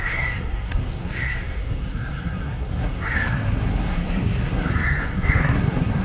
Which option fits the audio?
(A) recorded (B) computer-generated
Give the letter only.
B